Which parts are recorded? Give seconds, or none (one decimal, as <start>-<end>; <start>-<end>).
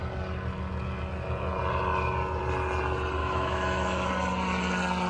0.0-3.2; 4.1-5.1